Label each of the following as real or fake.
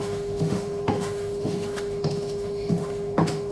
fake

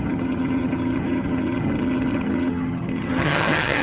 fake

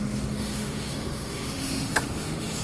fake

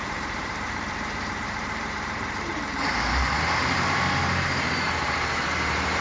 fake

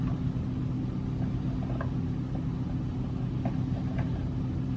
real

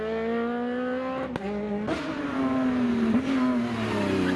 real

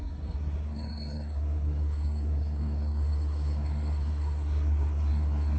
fake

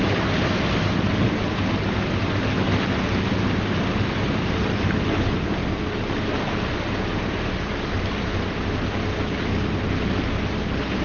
real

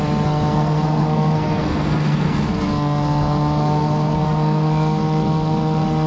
fake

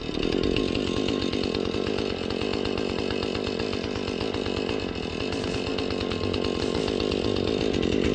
real